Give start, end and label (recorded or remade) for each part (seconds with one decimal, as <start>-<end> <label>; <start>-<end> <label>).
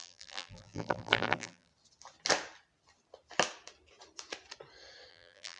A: 0.0-1.7 remade; 1.7-5.1 recorded; 5.1-5.6 remade